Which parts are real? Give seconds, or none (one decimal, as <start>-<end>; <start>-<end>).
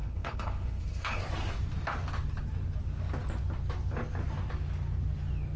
1.2-5.6